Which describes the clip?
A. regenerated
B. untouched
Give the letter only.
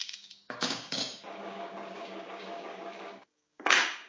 A